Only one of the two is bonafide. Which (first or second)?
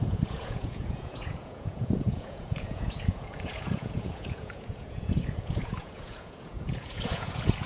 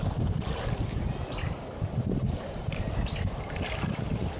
second